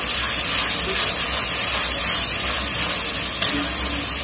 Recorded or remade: recorded